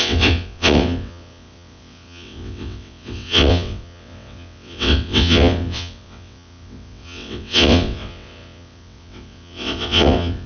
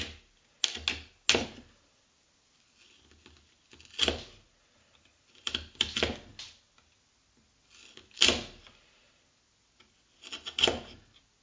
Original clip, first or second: second